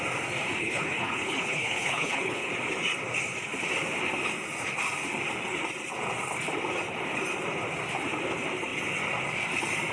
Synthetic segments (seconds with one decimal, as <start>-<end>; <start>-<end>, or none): 0.6-2.5

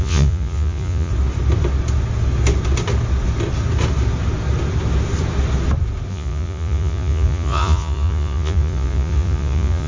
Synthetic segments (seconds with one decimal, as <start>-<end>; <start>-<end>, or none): 0.0-1.1; 6.1-9.9

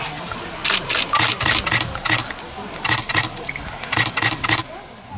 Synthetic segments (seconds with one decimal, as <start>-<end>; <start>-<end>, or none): 2.0-3.5

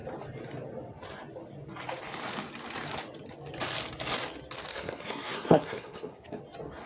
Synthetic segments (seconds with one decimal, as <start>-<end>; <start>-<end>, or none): 4.7-6.4

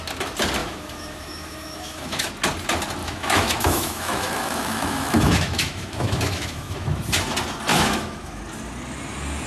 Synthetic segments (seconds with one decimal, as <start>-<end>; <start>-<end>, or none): 0.6-2.3; 3.0-7.0; 7.7-8.4

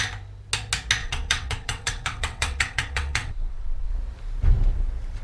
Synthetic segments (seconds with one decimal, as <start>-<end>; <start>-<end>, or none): 1.0-3.9

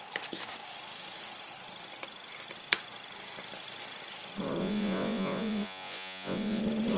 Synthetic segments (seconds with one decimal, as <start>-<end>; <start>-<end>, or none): 4.6-6.6